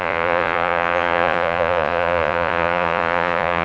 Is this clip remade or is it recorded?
remade